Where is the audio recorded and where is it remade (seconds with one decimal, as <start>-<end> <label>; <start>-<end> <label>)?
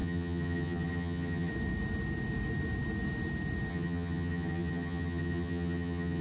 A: 0.0-1.5 remade; 1.5-3.7 recorded; 3.7-6.2 remade